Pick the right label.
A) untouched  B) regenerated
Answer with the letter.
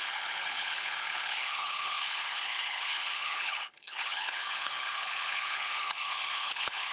B